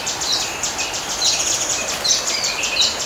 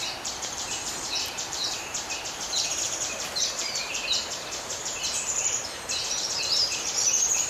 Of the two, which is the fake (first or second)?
second